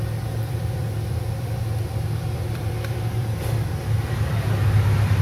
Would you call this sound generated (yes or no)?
yes